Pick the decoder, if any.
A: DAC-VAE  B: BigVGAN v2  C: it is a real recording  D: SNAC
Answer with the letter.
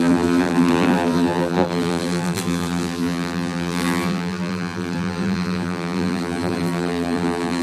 B